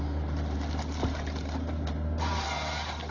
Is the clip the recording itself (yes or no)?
yes